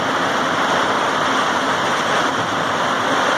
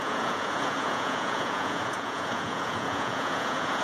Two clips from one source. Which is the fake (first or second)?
second